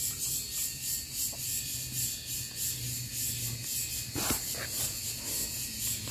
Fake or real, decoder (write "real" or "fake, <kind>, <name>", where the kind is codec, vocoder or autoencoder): real